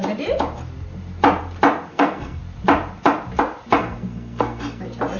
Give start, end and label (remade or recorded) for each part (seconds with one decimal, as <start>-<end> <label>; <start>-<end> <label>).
0.0-1.9 recorded; 1.9-2.4 remade; 2.4-3.8 recorded; 3.8-4.8 remade; 4.8-5.2 recorded